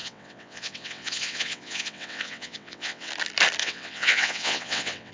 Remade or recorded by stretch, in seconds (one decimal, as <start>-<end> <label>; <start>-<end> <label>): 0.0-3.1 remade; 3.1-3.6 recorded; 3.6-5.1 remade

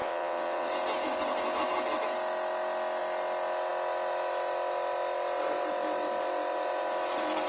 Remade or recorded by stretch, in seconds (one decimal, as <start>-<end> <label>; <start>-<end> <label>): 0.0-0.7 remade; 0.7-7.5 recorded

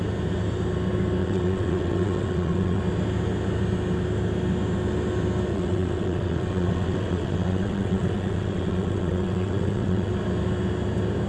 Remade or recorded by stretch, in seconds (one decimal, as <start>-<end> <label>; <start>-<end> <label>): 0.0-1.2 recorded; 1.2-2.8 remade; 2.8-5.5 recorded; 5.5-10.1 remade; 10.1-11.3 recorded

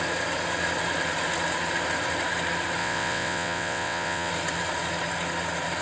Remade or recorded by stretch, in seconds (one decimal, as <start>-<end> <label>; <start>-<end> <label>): 0.0-2.8 recorded; 2.8-4.3 remade; 4.3-5.8 recorded

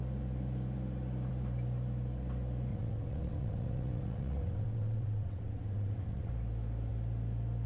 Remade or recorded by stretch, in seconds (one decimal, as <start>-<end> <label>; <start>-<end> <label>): 0.0-2.7 recorded; 2.7-6.3 remade; 6.3-7.7 recorded

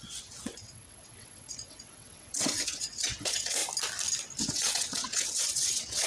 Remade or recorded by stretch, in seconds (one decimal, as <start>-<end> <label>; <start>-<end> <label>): 0.0-3.6 remade; 3.6-4.4 recorded; 4.4-6.1 remade

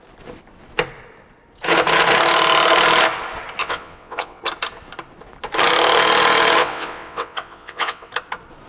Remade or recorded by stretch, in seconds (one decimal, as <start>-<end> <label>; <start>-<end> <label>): 0.0-3.6 recorded; 3.6-4.4 remade; 4.4-6.6 recorded; 6.6-8.1 remade; 8.1-8.7 recorded

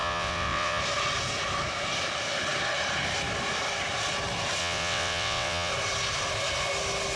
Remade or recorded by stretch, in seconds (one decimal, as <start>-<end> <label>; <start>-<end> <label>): 0.0-0.8 remade; 0.8-4.6 recorded; 4.6-5.7 remade; 5.7-7.2 recorded